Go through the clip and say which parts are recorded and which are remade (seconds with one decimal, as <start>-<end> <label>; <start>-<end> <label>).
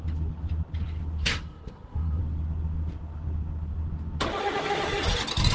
0.0-1.2 recorded; 1.2-2.2 remade; 2.2-5.5 recorded